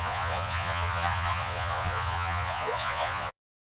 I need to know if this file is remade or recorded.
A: remade